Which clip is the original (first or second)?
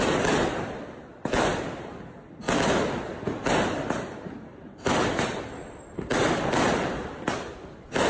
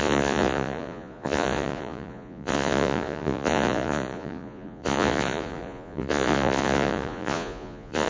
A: first